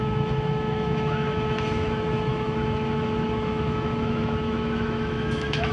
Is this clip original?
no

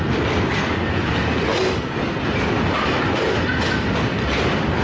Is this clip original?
yes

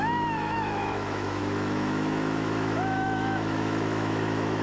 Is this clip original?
no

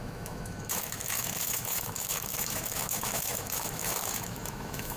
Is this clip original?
no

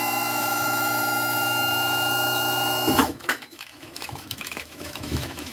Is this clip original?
no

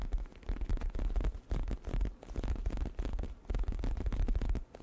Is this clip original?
yes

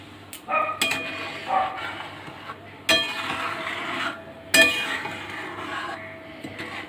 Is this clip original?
yes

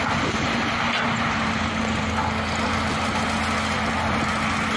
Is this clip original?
yes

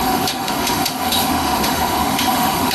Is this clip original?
no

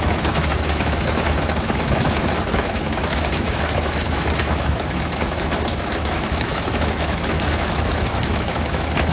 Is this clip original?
no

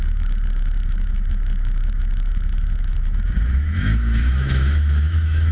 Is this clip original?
no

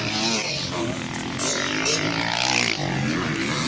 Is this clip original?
yes